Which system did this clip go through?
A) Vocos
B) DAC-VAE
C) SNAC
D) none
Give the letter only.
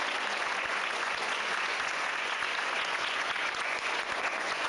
A